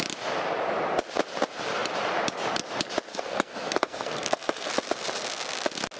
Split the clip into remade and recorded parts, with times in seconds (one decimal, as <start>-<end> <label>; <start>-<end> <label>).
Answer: 0.0-3.1 recorded; 3.1-4.7 remade; 4.7-6.0 recorded